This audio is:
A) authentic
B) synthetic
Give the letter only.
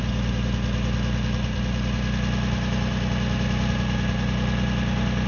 A